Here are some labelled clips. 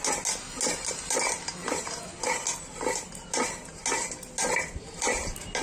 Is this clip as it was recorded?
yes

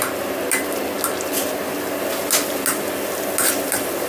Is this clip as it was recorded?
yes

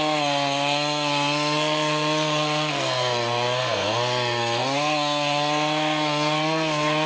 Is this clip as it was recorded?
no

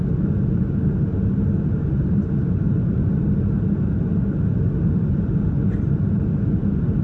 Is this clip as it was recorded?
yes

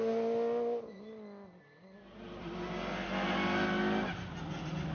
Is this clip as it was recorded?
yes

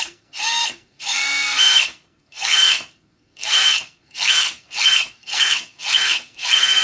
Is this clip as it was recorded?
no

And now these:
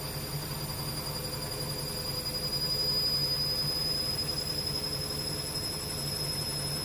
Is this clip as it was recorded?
yes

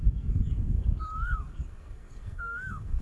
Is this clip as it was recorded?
no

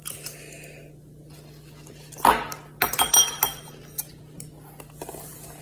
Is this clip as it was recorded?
yes